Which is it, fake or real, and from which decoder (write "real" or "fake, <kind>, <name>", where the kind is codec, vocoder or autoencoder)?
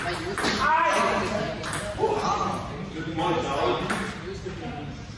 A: real